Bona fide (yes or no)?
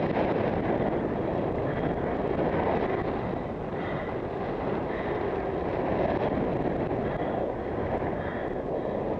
yes